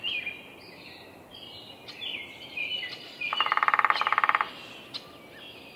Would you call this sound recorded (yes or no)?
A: yes